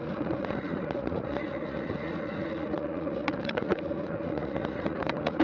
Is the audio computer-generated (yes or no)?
yes